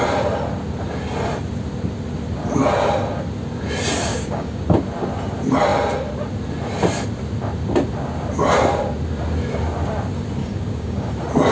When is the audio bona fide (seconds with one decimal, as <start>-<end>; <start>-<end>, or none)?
0.0-4.1; 4.6-10.4; 11.1-11.5